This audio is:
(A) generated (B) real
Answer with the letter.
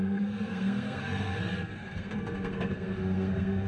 A